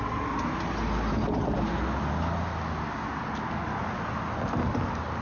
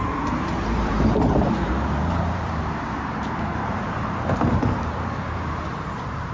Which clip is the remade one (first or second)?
second